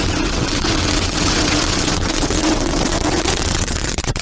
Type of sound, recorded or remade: remade